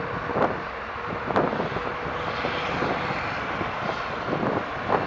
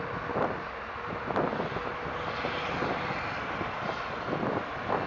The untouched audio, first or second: second